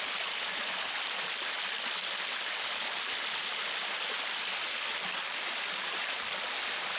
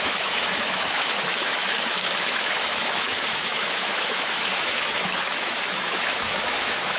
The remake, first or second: second